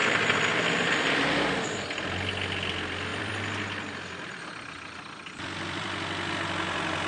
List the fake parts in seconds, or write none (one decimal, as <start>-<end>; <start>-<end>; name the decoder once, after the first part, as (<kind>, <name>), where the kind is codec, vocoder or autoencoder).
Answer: 0.0-1.4 (vocoder, BigVGAN v2); 3.1-6.3